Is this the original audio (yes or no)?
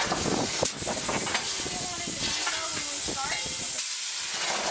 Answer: yes